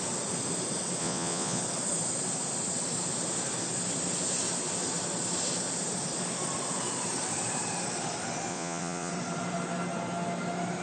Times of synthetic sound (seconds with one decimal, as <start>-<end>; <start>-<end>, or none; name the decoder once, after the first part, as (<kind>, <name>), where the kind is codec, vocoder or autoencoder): 1.0-1.6 (vocoder, Vocos); 8.5-9.1